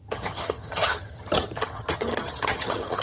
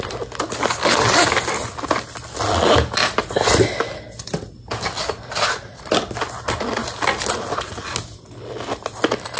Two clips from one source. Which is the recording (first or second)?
second